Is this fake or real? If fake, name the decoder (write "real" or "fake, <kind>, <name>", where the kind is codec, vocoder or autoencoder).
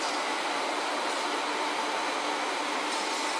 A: real